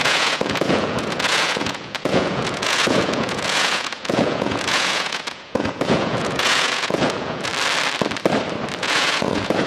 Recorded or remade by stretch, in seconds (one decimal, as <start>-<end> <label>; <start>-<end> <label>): 0.0-7.5 remade; 7.5-8.8 recorded; 8.8-9.7 remade